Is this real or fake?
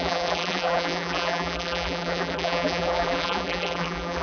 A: fake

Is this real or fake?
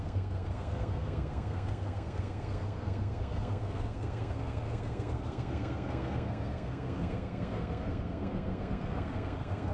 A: fake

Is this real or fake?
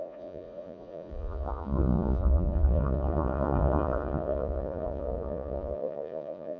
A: fake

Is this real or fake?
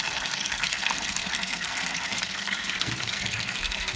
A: fake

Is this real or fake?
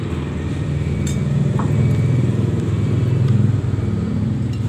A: fake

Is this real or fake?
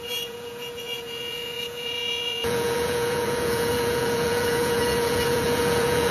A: fake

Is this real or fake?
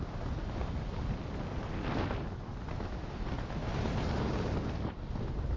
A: real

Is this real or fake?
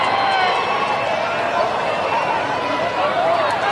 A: real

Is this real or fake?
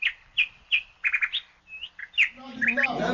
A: real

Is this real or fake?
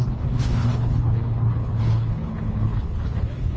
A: fake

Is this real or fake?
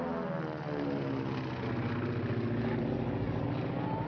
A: real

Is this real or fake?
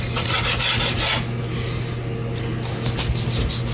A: real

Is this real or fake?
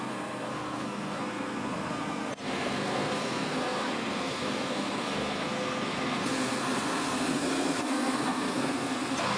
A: fake